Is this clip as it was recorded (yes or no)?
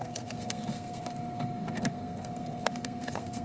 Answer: no